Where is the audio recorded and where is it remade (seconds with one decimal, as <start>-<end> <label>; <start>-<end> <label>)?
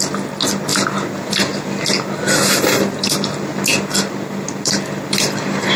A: 0.0-0.7 recorded; 0.7-2.2 remade; 2.2-3.7 recorded; 3.7-5.8 remade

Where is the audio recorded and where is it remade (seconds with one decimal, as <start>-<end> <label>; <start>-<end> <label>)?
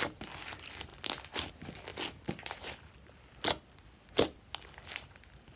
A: 0.0-1.9 recorded; 1.9-4.5 remade; 4.5-5.6 recorded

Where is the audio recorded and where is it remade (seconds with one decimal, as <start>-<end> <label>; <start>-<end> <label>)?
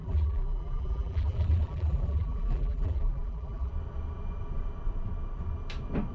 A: 0.0-3.7 remade; 3.7-6.1 recorded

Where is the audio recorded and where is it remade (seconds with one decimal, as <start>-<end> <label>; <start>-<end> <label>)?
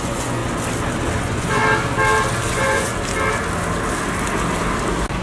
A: 0.0-0.4 remade; 0.4-1.2 recorded; 1.2-1.6 remade; 1.6-2.5 recorded; 2.5-2.9 remade; 2.9-5.2 recorded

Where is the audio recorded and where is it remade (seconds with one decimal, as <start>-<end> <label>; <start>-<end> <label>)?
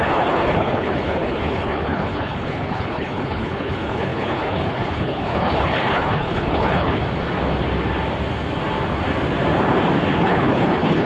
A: 0.0-7.0 remade; 7.0-10.2 recorded; 10.2-11.1 remade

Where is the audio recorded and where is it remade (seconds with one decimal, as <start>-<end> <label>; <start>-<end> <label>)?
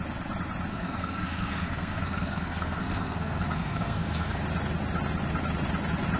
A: 0.0-0.7 recorded; 0.7-4.4 remade; 4.4-6.2 recorded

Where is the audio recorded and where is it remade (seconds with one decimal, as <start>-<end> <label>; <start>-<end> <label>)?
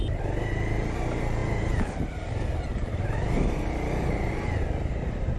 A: 0.0-5.4 recorded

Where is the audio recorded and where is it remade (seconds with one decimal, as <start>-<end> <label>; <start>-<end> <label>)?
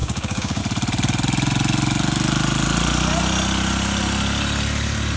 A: 0.0-0.6 remade; 0.6-5.2 recorded